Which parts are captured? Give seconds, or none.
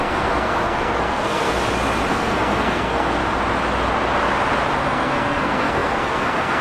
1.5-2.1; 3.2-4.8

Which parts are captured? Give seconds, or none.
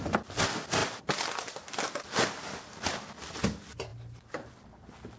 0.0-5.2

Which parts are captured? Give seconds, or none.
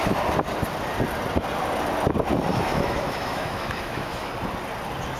0.0-2.5; 4.3-5.2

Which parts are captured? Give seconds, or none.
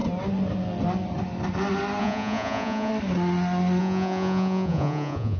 0.0-2.0; 2.9-3.8